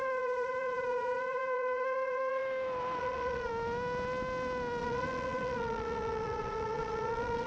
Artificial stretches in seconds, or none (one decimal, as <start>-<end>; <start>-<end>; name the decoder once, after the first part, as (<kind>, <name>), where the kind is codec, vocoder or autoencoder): 0.0-2.4 (vocoder, Vocos); 3.0-3.5; 4.8-7.5